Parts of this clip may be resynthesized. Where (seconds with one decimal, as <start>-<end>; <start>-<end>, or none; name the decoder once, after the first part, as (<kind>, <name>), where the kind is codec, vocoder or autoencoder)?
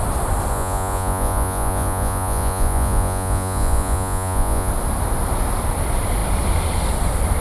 0.5-4.7 (vocoder, Vocos)